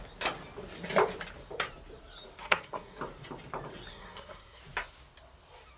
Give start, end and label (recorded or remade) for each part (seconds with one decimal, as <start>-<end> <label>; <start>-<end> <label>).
0.0-2.4 recorded; 2.4-3.0 remade; 3.0-3.9 recorded; 3.9-4.6 remade; 4.6-5.8 recorded